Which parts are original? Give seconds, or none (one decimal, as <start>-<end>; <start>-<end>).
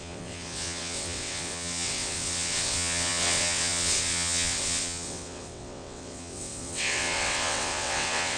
none